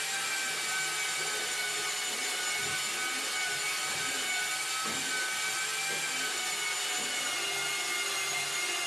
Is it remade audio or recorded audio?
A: recorded